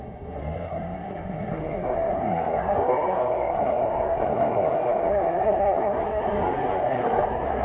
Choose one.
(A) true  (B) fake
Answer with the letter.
B